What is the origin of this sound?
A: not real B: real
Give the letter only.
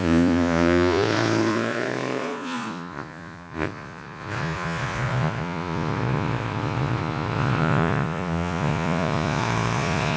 A